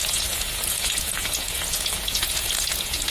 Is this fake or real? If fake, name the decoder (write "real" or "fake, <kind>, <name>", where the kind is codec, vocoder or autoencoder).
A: fake, vocoder, Vocos